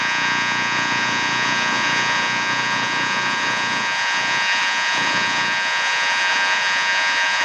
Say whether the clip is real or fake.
fake